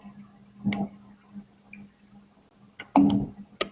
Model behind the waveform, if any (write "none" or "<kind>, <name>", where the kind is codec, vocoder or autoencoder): none